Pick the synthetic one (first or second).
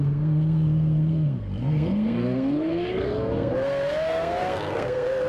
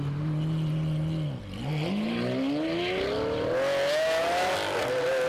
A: first